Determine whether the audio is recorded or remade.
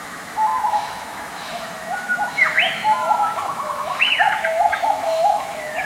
remade